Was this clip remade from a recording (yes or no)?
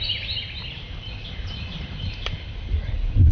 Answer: no